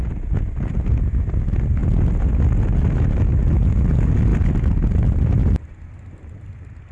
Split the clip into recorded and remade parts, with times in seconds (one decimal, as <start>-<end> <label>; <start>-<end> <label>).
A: 0.0-6.9 recorded